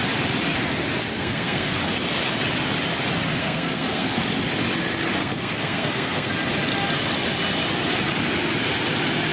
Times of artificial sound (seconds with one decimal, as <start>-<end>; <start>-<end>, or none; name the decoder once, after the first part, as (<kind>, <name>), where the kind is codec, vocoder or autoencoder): 1.1-1.8 (codec, SNAC); 3.4-4.2; 5.2-6.3